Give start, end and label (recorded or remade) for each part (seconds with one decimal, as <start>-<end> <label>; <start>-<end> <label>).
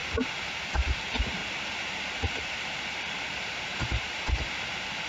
0.0-1.4 recorded; 1.4-4.5 remade; 4.5-5.1 recorded